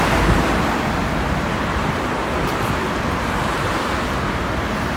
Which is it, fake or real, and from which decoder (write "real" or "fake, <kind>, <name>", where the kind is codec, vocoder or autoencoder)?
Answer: fake, vocoder, BigVGAN v2